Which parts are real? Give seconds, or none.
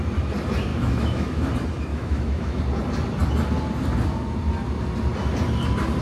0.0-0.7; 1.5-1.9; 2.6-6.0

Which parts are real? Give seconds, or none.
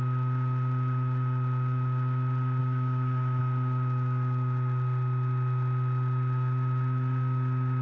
0.0-2.6; 3.4-7.8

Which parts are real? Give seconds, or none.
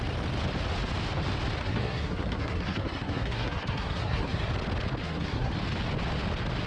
0.0-1.6; 4.5-5.0; 5.5-6.7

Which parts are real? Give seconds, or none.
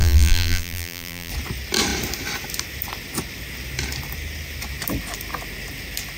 1.3-6.2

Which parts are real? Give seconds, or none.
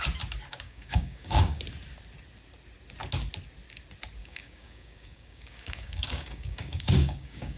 0.0-0.5; 1.6-4.2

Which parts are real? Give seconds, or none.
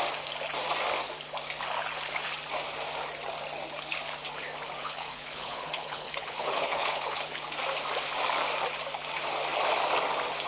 0.0-4.8; 7.3-10.5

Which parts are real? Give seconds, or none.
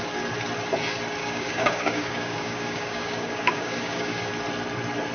0.0-1.2; 4.3-5.1